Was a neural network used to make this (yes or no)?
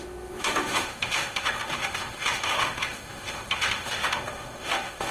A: yes